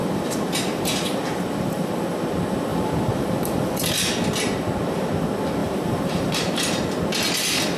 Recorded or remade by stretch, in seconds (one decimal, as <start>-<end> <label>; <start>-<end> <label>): 0.0-1.9 remade; 1.9-2.7 recorded; 2.7-3.9 remade; 3.9-5.6 recorded; 5.6-6.6 remade; 6.6-7.8 recorded